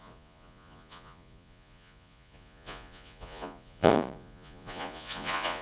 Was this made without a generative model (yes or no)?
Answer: no